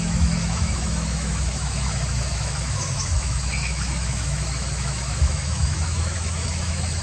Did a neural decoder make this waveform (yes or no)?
yes